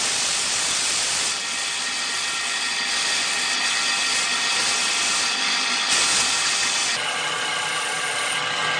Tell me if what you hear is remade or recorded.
recorded